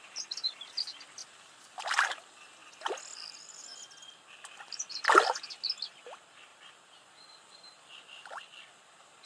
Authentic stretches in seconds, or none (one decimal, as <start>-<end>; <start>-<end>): 0.0-1.2; 1.8-6.5; 8.4-9.3